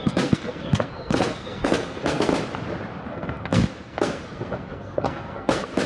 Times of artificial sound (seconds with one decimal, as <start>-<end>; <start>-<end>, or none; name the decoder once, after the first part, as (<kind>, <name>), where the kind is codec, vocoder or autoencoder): 0.0-2.3 (codec, SNAC); 3.1-5.9